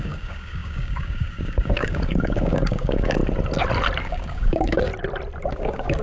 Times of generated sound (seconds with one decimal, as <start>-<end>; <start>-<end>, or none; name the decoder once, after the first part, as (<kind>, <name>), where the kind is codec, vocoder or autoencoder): 0.0-3.2 (codec, DAC); 4.0-4.9; 5.5-6.0